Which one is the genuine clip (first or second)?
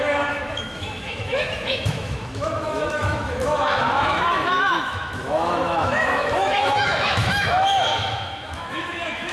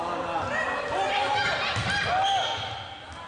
second